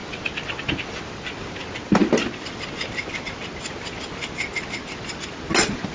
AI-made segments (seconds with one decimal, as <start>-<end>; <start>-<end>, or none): none